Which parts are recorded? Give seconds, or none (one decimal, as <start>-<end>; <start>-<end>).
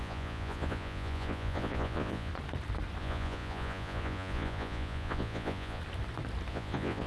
2.3-3.0; 5.8-6.5